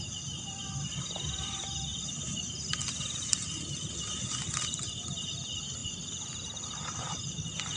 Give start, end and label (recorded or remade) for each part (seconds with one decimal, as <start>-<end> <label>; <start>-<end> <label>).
0.0-7.8 recorded